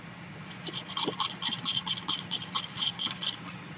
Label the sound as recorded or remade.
remade